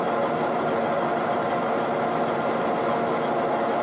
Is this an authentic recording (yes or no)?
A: yes